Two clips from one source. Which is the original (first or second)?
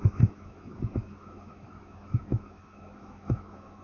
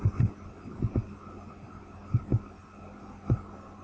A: second